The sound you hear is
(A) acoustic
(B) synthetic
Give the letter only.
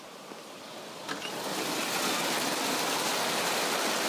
A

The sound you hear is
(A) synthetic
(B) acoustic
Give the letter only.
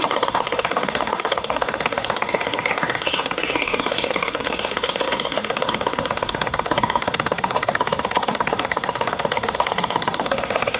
A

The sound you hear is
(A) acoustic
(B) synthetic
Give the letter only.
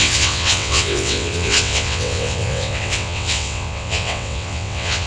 B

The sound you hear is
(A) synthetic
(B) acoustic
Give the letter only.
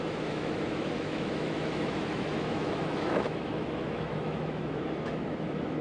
A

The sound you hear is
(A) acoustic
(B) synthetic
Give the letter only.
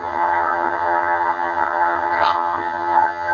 B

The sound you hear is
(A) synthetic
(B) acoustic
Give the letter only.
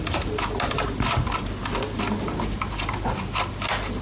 B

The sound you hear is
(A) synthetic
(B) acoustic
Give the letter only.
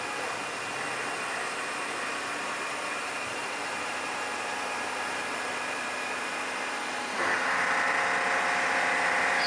B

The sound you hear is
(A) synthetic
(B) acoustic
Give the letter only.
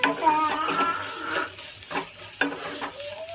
B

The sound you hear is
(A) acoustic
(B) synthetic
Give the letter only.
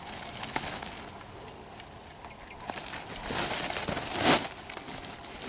A